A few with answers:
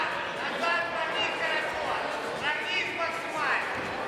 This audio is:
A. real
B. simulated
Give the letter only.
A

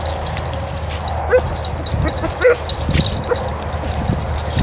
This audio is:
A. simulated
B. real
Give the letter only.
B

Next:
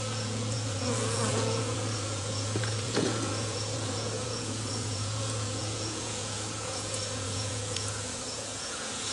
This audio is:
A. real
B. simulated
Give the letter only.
B